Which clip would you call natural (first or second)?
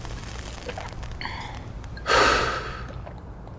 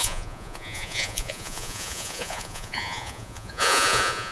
first